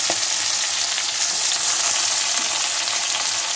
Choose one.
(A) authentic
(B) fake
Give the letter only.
A